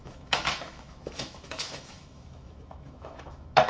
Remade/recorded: remade